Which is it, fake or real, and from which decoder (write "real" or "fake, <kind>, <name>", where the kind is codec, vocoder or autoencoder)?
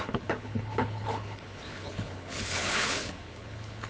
fake, codec, HILCodec